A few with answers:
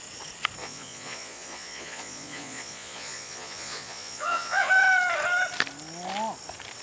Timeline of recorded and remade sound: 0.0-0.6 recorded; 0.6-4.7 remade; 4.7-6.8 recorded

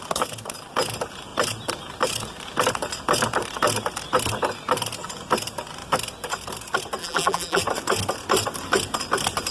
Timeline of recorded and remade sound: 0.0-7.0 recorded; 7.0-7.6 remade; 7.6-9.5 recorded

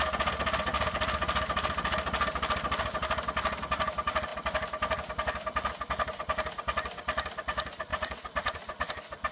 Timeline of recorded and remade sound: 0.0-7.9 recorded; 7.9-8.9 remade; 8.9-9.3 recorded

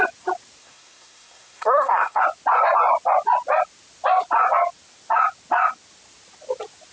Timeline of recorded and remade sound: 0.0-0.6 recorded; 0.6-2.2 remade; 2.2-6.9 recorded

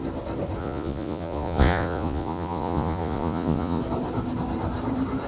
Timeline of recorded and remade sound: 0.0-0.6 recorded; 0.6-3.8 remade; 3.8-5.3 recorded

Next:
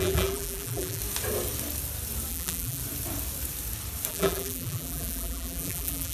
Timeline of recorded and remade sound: 0.0-1.0 remade; 1.0-2.3 recorded; 2.3-2.8 remade; 2.8-4.1 recorded; 4.1-6.1 remade

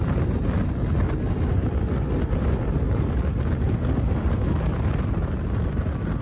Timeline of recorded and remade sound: 0.0-6.2 recorded

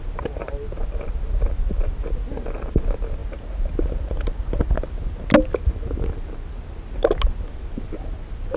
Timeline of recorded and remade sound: 0.0-8.6 recorded